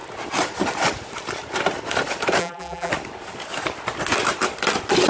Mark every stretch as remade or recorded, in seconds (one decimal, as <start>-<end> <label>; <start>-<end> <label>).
0.0-2.4 recorded; 2.4-2.9 remade; 2.9-5.1 recorded